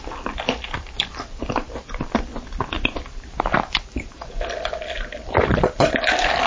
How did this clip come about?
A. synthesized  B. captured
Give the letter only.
A